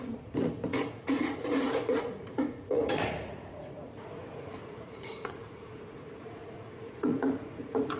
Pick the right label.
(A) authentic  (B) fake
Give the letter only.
B